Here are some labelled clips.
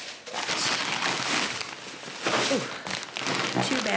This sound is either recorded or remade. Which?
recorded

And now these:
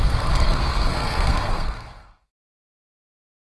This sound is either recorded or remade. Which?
remade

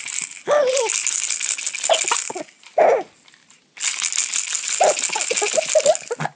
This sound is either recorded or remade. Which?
recorded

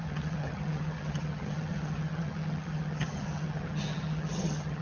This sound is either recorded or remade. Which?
remade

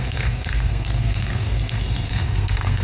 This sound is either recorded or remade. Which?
remade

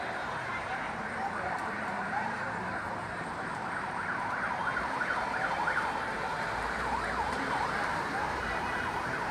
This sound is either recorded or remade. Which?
remade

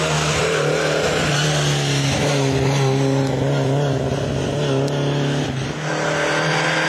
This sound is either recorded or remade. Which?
recorded